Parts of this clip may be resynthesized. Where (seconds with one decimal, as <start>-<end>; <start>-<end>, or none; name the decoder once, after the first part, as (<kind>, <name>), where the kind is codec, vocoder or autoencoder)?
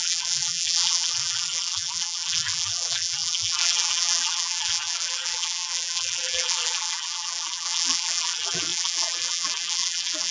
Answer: 0.0-10.3 (vocoder, BigVGAN v2)